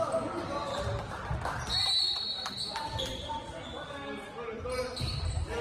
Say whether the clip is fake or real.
real